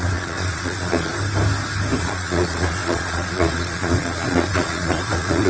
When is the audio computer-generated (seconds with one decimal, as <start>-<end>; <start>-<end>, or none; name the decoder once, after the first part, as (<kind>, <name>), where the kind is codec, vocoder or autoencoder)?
0.0-1.1 (vocoder, Vocos); 2.0-5.5